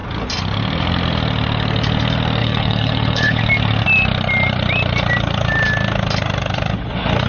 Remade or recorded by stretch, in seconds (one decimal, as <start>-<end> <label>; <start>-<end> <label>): 0.0-2.4 recorded; 2.4-3.4 remade; 3.4-7.3 recorded